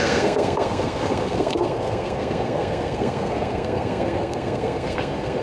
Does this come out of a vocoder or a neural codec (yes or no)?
yes